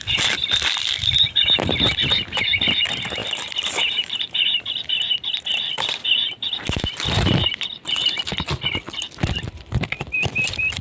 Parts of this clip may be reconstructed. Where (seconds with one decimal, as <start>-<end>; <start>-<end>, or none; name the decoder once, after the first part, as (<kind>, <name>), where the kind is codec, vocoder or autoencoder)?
none